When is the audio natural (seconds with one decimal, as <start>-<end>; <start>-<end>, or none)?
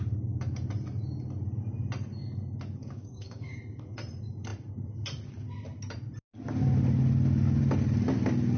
0.0-2.8; 3.6-8.6